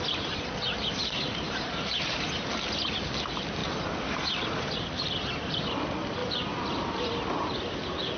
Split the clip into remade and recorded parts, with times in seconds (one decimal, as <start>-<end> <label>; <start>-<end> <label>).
0.0-1.0 recorded; 1.0-2.5 remade; 2.5-3.6 recorded; 3.6-4.7 remade; 4.7-6.2 recorded; 6.2-7.2 remade; 7.2-8.2 recorded